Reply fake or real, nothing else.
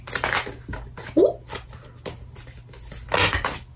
real